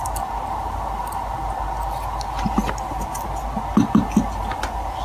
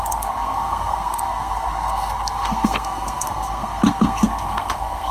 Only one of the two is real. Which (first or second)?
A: first